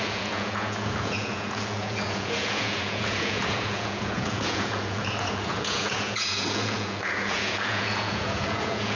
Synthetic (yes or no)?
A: yes